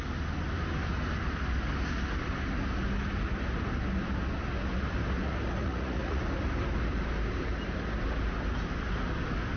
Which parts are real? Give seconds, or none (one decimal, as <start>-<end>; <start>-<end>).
0.0-5.6; 6.2-9.6